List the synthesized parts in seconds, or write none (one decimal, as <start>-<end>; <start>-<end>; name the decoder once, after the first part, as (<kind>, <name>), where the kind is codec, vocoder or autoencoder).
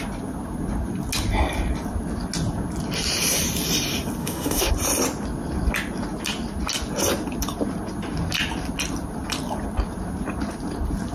4.2-4.7 (autoencoder, DAC-VAE)